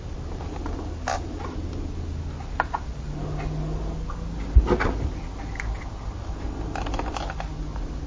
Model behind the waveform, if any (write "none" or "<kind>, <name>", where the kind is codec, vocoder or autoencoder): none